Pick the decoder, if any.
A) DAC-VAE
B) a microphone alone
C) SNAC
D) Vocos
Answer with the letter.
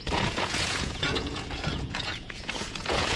D